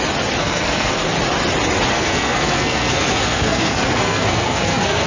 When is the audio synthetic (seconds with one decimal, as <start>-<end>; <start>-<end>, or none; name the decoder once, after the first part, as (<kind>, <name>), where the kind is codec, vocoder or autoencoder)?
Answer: 0.4-1.1 (codec, SNAC); 1.9-5.1